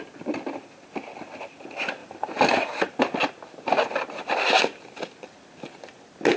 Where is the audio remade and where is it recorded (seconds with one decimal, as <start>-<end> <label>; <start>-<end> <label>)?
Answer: 0.0-2.0 recorded; 2.0-3.0 remade; 3.0-6.4 recorded